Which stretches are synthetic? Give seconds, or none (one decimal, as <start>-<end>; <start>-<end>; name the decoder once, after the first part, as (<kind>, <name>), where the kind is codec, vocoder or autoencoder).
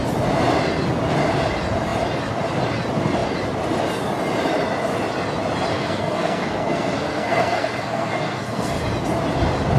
5.7-8.8 (codec, SNAC)